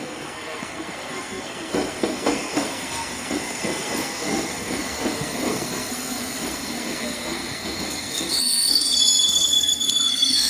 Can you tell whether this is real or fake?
fake